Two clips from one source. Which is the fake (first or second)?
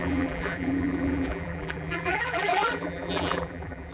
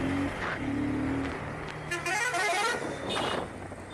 first